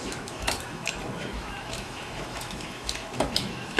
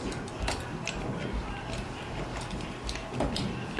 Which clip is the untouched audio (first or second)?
second